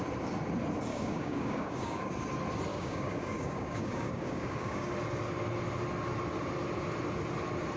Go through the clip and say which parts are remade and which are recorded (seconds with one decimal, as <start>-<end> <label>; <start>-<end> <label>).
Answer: 0.0-0.9 recorded; 0.9-2.1 remade; 2.1-2.7 recorded; 2.7-4.9 remade; 4.9-7.8 recorded